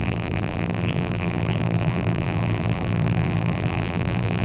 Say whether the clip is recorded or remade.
remade